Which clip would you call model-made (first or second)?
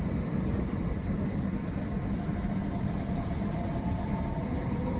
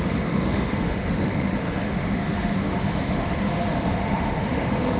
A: second